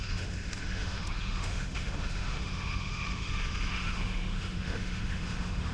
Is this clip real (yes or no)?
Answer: no